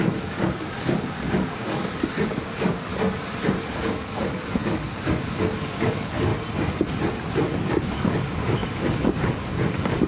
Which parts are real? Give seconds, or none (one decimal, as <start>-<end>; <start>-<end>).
2.9-3.7; 6.3-7.3